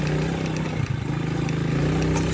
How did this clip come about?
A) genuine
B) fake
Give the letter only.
A